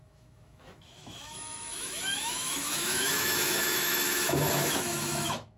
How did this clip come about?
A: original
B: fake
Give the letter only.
B